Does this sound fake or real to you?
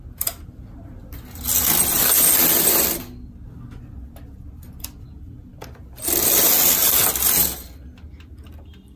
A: real